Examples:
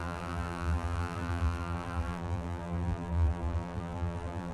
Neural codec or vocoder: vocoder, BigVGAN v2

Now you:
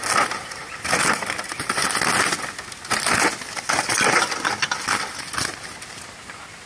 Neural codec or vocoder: none